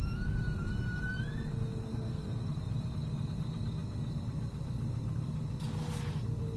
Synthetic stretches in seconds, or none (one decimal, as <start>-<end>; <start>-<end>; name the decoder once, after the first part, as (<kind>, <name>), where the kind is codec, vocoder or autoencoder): 1.9-2.5 (codec, SNAC)